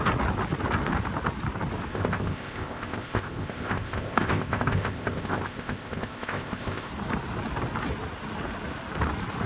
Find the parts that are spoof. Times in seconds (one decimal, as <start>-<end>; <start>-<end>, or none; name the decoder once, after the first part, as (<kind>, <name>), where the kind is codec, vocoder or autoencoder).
1.9-6.9 (codec, ZipCodec)